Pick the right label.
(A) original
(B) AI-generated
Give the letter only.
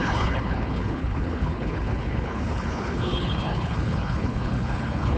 B